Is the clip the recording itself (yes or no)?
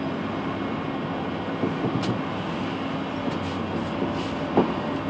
yes